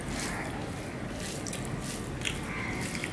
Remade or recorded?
recorded